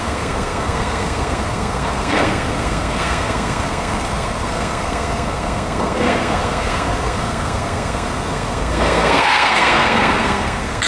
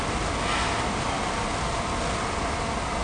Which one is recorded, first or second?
second